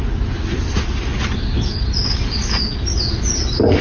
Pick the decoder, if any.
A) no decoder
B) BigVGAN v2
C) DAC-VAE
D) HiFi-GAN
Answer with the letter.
A